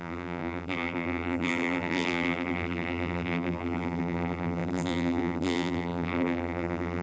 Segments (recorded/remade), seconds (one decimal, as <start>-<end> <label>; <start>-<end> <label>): 0.0-7.0 remade